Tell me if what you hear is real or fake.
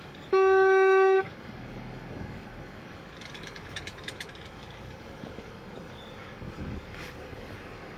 fake